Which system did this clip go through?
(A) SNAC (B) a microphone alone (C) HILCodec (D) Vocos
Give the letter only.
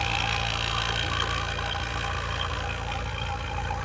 B